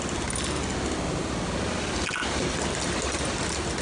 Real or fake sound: real